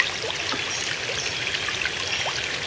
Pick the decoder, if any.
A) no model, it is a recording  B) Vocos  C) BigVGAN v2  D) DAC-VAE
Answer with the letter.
A